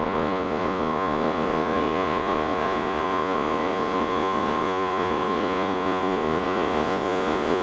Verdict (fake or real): fake